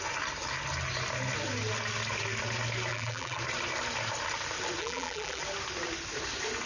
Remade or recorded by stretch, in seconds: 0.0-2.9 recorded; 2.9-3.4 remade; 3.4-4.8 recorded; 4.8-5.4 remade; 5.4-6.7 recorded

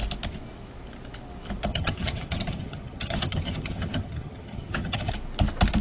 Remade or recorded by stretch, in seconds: 0.0-1.7 recorded; 1.7-5.1 remade; 5.1-5.8 recorded